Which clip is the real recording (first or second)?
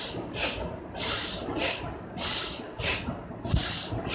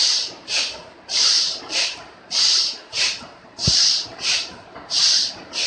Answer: first